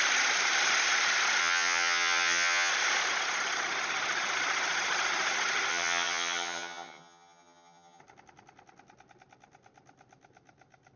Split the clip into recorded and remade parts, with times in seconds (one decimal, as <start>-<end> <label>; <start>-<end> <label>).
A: 0.0-1.4 recorded; 1.4-2.7 remade; 2.7-5.7 recorded; 5.7-8.0 remade; 8.0-11.0 recorded